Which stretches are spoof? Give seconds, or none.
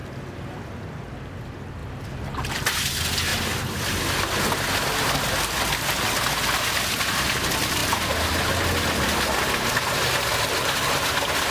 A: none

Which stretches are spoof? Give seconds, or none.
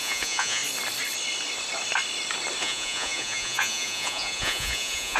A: 0.0-0.6 (vocoder, Vocos); 2.6-5.2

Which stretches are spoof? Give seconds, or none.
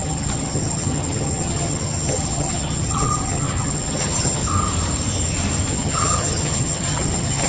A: 0.0-4.4 (vocoder, HiFi-GAN); 5.7-7.5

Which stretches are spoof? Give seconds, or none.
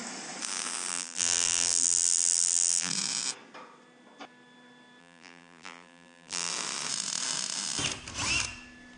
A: 0.9-2.9 (vocoder, BigVGAN v2); 5.0-6.5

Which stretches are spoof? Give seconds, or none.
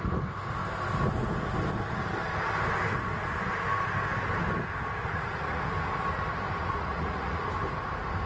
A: 5.0-5.6 (vocoder, Vocos); 6.6-7.4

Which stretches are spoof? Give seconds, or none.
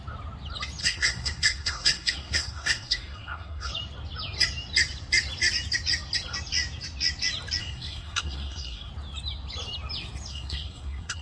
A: 0.8-3.7 (codec, SNAC); 7.6-8.9; 10.3-11.2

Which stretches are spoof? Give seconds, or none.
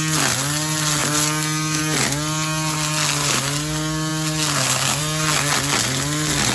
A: none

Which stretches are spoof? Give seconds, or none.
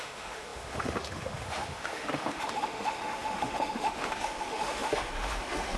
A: 0.0-5.8 (autoencoder, DAC-VAE)